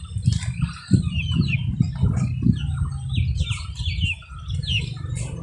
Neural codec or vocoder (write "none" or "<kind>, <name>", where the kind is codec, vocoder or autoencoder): none